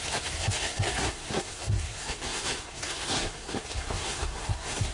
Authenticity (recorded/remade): remade